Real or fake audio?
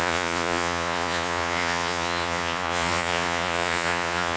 fake